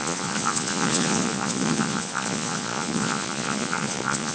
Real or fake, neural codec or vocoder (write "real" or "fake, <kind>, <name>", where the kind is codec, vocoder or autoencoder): fake, vocoder, Vocos